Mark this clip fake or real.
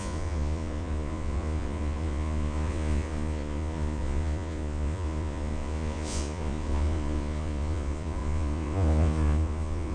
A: fake